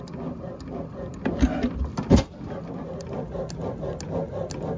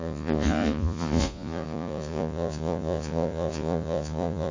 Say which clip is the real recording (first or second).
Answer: first